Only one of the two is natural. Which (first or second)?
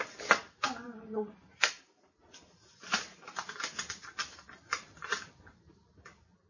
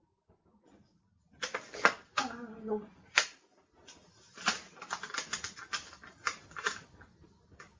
second